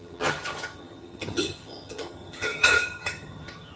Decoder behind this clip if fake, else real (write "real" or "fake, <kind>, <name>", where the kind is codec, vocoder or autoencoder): fake, vocoder, HiFi-GAN